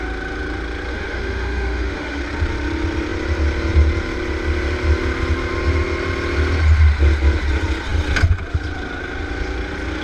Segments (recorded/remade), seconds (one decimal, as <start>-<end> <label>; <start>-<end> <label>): 0.0-0.9 recorded; 0.9-2.2 remade; 2.2-10.0 recorded